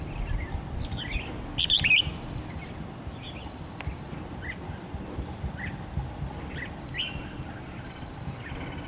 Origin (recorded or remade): recorded